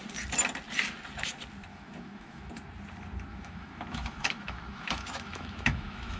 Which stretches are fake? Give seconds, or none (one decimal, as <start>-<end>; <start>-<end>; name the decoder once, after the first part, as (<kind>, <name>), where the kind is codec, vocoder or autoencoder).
1.7-2.5 (autoencoder, DAC-VAE); 3.3-6.2